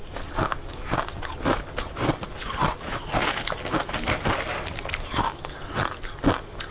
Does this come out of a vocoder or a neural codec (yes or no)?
no